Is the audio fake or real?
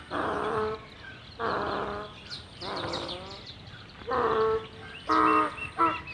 fake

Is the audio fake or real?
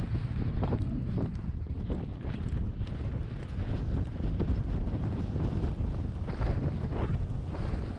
real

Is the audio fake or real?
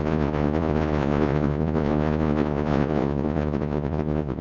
fake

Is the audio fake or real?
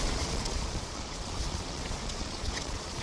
fake